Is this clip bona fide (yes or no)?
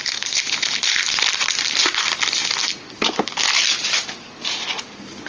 yes